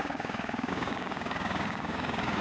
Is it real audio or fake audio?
fake